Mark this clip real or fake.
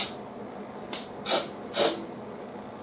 real